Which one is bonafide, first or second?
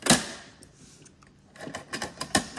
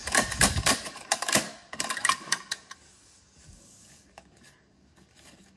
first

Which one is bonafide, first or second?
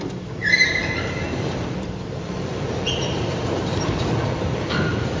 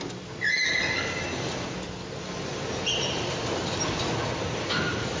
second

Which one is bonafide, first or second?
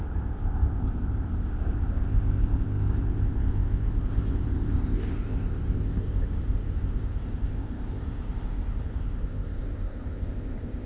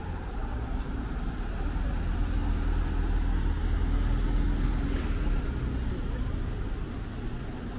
second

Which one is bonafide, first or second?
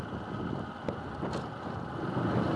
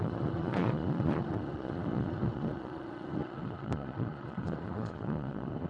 first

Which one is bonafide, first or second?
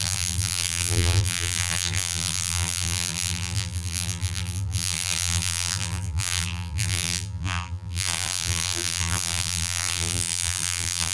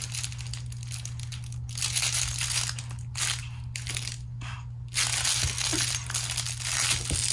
second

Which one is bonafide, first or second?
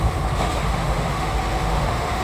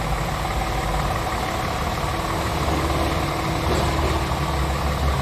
second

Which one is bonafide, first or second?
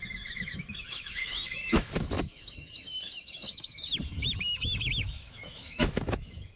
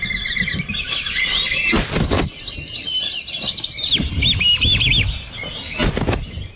second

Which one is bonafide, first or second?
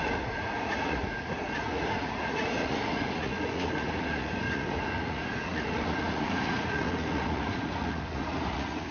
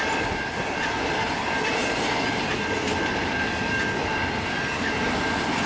second